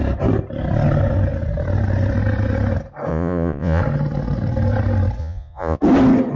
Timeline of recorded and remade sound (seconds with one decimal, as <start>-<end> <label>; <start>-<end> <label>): 0.0-3.1 recorded; 3.1-3.8 remade; 3.8-5.2 recorded; 5.2-5.8 remade; 5.8-6.4 recorded